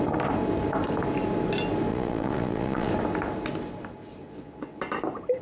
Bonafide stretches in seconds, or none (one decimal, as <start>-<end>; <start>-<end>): 0.0-1.9; 2.9-4.2; 4.8-5.4